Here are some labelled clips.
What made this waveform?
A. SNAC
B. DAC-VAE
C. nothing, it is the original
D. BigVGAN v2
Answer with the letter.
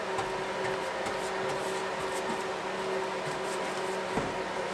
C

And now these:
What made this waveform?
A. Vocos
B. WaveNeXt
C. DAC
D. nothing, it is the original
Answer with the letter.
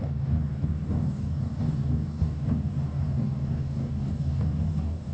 C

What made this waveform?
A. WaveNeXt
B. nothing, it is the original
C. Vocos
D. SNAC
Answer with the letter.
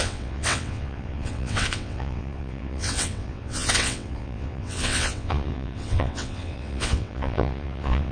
A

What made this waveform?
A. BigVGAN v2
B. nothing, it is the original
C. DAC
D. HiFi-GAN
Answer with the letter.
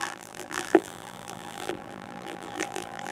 A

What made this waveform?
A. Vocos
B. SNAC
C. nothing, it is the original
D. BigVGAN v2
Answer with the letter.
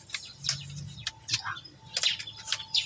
C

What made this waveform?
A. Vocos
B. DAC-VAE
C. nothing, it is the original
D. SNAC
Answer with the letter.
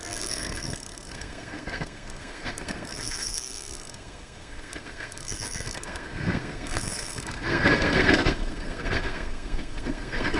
D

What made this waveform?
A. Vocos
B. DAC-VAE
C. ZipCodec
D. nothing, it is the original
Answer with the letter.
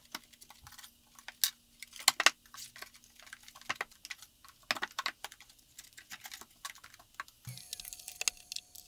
D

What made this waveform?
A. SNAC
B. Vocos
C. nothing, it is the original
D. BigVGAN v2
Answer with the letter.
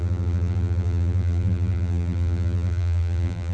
D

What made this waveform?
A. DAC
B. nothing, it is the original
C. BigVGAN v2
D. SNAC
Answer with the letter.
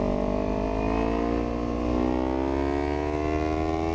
B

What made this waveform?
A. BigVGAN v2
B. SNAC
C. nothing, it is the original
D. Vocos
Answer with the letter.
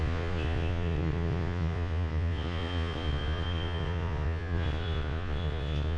D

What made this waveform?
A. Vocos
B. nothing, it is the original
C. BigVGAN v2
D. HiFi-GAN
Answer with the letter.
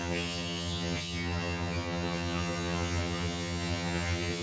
D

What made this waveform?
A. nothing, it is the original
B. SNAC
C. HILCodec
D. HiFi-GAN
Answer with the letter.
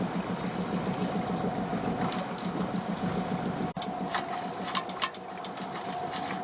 A